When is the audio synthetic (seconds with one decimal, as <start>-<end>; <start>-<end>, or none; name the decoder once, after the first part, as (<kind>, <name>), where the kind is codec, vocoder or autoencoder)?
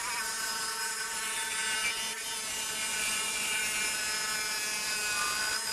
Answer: 2.9-3.6 (vocoder, Vocos)